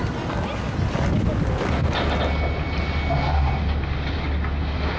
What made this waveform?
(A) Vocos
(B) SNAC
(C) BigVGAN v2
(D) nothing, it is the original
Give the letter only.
D